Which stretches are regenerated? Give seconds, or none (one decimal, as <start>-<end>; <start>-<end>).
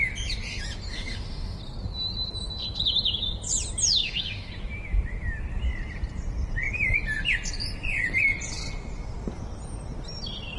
0.9-1.6; 4.0-4.5